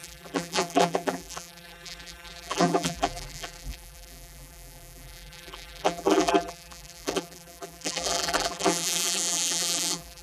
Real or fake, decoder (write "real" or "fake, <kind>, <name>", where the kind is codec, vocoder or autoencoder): fake, vocoder, BigVGAN v2